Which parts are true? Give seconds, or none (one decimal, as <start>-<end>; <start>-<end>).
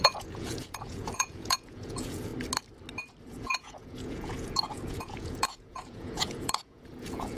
2.3-3.2